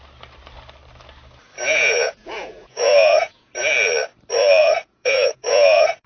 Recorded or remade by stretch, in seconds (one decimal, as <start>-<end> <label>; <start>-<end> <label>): 0.0-1.7 recorded; 1.7-3.5 remade; 3.5-4.6 recorded; 4.6-6.1 remade